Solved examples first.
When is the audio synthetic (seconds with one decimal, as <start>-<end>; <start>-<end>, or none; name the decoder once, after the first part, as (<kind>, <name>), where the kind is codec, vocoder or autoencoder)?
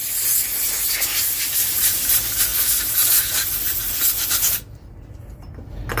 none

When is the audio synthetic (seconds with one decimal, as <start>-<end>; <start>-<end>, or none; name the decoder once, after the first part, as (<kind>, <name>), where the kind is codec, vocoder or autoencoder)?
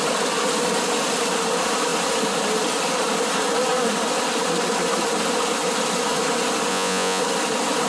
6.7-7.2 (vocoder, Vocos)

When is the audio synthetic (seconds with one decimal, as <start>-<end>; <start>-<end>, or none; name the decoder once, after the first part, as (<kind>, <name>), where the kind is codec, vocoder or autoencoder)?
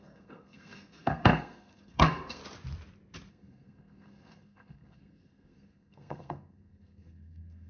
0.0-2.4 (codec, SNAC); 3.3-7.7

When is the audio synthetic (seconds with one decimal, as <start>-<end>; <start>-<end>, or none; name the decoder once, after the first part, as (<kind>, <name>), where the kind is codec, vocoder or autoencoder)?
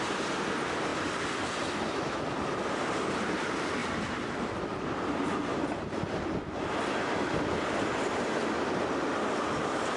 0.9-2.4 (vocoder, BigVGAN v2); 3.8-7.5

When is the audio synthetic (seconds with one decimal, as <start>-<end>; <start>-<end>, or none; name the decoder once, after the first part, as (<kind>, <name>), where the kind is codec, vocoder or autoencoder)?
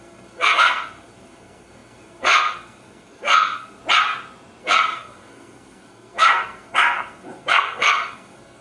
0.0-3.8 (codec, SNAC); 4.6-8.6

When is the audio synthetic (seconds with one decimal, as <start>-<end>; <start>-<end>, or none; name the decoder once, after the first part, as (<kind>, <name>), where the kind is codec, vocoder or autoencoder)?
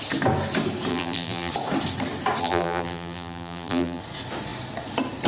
0.9-1.5 (vocoder, BigVGAN v2); 2.4-4.0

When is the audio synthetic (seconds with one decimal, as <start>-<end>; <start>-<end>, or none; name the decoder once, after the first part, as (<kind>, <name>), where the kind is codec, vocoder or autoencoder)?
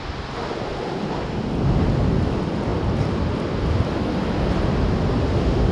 none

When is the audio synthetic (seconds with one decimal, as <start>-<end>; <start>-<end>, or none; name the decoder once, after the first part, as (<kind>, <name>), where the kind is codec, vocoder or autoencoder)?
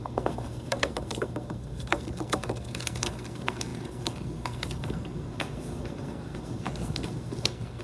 0.0-7.8 (codec, SNAC)